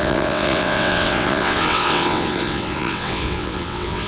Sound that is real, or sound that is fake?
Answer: fake